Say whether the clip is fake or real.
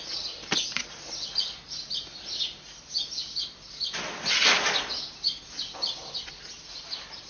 real